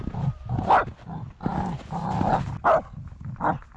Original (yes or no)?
yes